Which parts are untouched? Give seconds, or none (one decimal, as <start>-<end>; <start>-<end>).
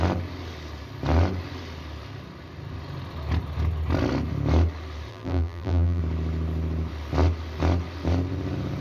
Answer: 0.0-5.1; 6.0-8.8